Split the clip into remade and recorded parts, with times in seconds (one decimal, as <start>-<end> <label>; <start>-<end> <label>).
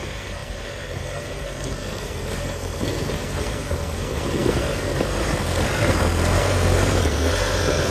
0.0-7.9 remade